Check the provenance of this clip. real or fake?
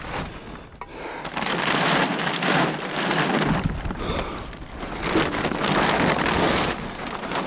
real